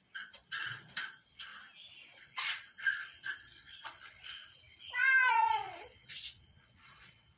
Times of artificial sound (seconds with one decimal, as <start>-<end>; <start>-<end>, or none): 0.0-1.5; 2.2-4.4; 5.3-7.4

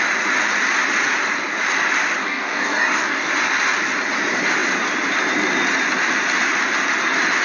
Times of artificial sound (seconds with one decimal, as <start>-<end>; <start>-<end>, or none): 2.2-3.3

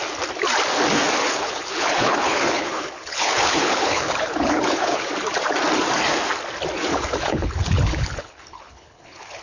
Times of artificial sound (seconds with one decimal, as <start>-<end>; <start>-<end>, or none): 1.2-5.1; 6.9-9.4

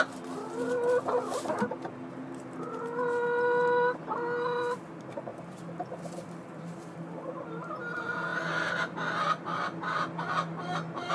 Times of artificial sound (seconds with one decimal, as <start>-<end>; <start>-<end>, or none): 5.3-7.9; 8.3-8.8

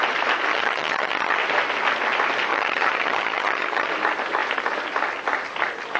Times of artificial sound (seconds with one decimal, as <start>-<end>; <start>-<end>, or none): 0.5-1.4; 2.5-3.9

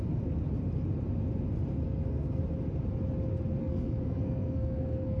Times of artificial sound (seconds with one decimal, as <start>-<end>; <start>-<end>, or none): 1.7-2.4; 3.6-5.2

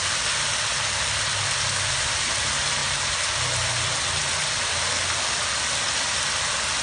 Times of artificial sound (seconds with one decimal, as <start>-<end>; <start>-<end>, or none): none